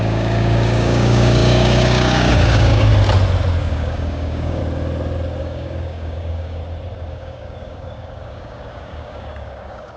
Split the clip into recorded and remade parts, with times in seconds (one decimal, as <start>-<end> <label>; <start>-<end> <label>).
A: 0.0-2.9 remade; 2.9-3.6 recorded; 3.6-4.6 remade; 4.6-5.4 recorded; 5.4-6.6 remade; 6.6-7.1 recorded; 7.1-10.0 remade